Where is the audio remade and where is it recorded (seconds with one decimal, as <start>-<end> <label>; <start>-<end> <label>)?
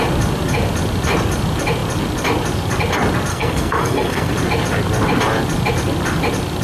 0.0-3.3 recorded; 3.3-4.3 remade; 4.3-6.6 recorded